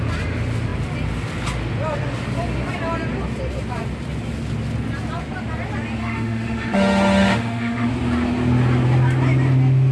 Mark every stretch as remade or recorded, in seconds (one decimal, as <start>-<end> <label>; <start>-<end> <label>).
0.0-6.0 recorded; 6.0-7.9 remade; 7.9-9.9 recorded